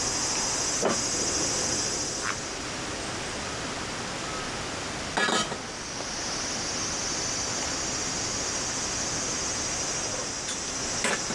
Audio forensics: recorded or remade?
recorded